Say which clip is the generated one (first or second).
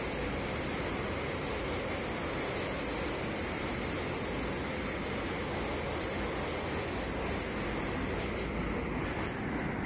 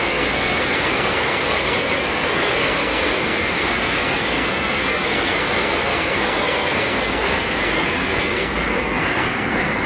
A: second